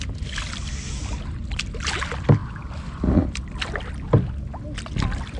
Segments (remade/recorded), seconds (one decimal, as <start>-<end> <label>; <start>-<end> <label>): 0.0-5.4 recorded